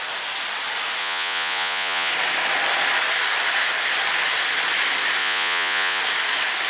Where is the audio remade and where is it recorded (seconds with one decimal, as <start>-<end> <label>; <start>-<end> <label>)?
0.0-1.0 recorded; 1.0-2.1 remade; 2.1-5.2 recorded; 5.2-6.0 remade; 6.0-6.7 recorded